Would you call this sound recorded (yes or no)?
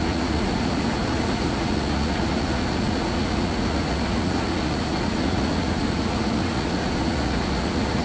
no